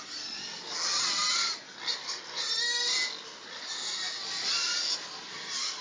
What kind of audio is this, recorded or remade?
recorded